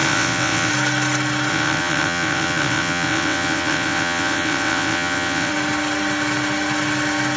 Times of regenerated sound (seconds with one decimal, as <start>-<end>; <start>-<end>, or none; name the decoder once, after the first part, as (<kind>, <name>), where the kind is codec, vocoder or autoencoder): 0.0-0.7 (vocoder, WaveNeXt); 1.5-5.5